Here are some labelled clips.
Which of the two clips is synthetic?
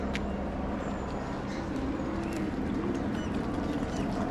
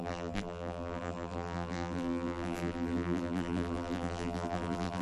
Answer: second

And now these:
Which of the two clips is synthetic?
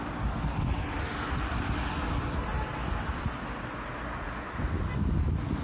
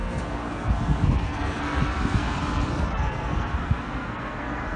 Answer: second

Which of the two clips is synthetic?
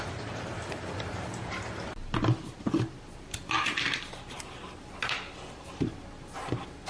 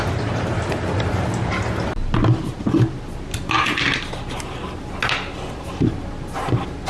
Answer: first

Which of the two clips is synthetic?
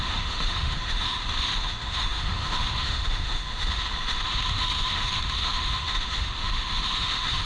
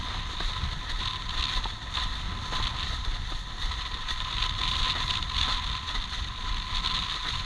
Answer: first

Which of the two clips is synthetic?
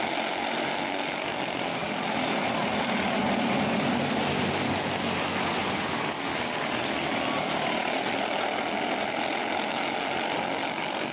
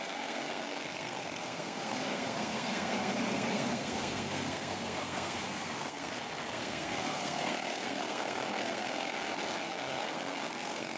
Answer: second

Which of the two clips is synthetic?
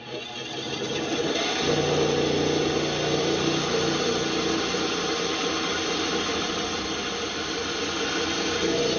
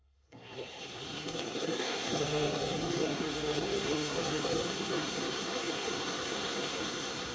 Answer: second